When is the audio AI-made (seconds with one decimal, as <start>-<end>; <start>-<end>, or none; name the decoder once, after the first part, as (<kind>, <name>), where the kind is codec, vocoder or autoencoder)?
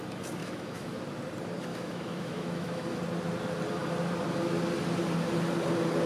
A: 0.4-1.0 (autoencoder, DAC-VAE); 1.7-3.0